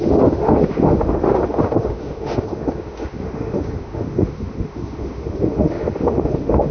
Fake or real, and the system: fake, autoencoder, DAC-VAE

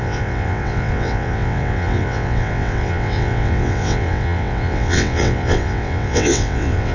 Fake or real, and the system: fake, vocoder, WaveNeXt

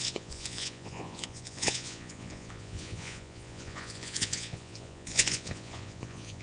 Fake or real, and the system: fake, vocoder, Vocos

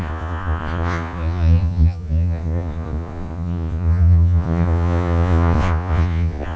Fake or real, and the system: fake, vocoder, Vocos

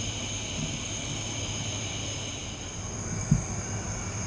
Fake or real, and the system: real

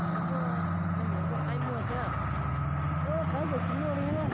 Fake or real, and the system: real